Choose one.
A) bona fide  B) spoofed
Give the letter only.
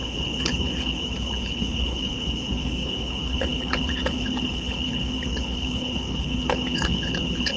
B